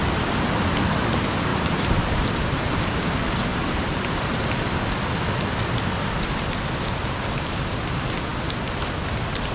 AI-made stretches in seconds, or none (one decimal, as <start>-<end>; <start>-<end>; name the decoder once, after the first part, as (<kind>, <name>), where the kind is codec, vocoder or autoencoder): 1.5-3.1 (vocoder, BigVGAN v2); 3.5-4.7